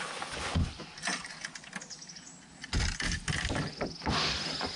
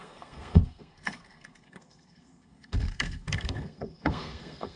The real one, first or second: first